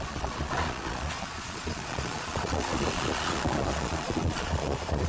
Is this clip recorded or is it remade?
remade